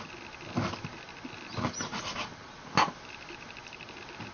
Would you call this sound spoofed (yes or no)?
no